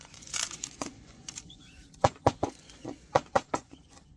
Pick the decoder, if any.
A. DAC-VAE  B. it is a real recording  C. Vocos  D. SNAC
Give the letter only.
C